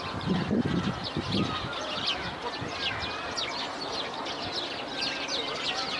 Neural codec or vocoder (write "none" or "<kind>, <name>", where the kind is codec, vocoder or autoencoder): none